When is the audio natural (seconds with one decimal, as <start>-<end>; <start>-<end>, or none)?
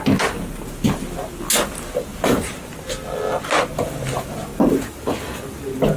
0.0-2.1; 2.6-4.5